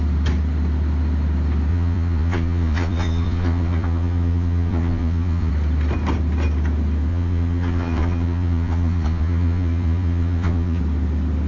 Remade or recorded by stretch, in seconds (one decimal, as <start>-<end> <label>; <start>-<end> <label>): 0.0-1.7 recorded; 1.7-5.5 remade; 5.5-7.1 recorded; 7.1-10.8 remade; 10.8-11.5 recorded